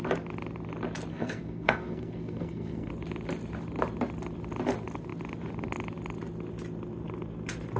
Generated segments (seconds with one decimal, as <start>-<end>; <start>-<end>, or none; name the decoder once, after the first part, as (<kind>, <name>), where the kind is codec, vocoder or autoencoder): 1.1-2.9 (codec, SNAC)